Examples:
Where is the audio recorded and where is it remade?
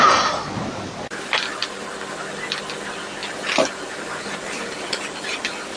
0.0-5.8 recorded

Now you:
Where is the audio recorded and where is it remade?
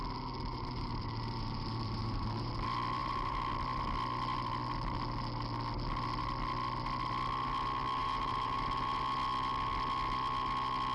0.0-0.5 recorded; 0.5-2.5 remade; 2.5-3.0 recorded; 3.0-3.5 remade; 3.5-8.0 recorded; 8.0-9.0 remade; 9.0-10.9 recorded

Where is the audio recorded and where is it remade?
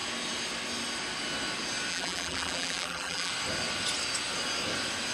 0.0-1.9 recorded; 1.9-3.3 remade; 3.3-5.1 recorded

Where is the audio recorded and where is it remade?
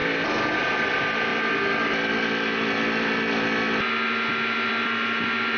0.0-5.6 recorded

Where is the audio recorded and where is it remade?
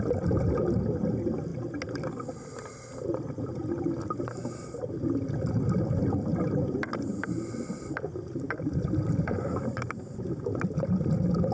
0.0-11.5 recorded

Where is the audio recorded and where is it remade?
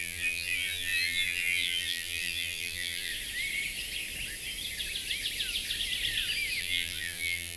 0.0-3.1 remade; 3.1-6.6 recorded; 6.6-7.6 remade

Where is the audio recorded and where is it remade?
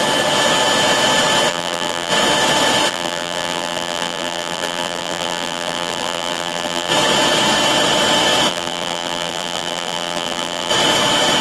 0.0-1.5 recorded; 1.5-2.1 remade; 2.1-2.9 recorded; 2.9-6.9 remade; 6.9-8.5 recorded; 8.5-10.7 remade; 10.7-11.4 recorded